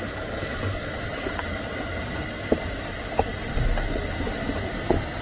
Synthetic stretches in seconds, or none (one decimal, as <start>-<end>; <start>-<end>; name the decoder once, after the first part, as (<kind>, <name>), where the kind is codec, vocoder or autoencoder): none

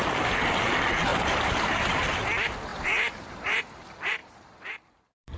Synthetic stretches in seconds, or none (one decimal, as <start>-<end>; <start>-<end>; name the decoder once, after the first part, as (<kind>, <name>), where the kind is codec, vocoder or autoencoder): 1.1-2.0 (vocoder, BigVGAN v2); 2.7-3.6; 4.2-5.4

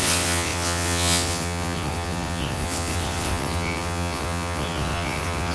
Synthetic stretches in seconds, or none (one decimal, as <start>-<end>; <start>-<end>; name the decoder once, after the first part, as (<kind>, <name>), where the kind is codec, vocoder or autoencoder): 0.0-5.5 (vocoder, WaveNeXt)

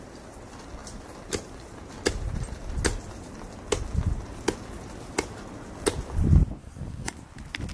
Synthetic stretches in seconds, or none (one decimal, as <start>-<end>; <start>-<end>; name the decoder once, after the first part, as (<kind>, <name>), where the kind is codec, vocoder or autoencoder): 6.6-7.1 (codec, DAC)

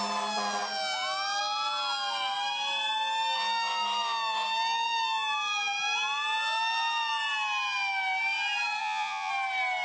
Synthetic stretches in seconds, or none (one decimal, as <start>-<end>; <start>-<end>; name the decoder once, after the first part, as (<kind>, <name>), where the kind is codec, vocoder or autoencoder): 8.8-9.3 (vocoder, Vocos)